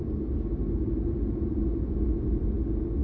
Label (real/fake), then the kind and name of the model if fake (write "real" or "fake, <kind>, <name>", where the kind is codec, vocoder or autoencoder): real